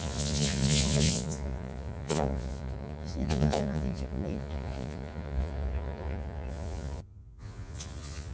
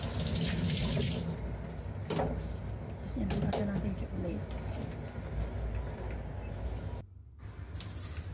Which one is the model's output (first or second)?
first